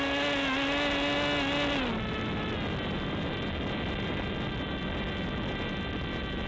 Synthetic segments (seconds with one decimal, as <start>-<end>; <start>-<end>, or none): none